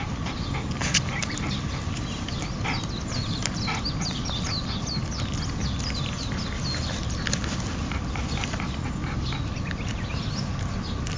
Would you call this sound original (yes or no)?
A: yes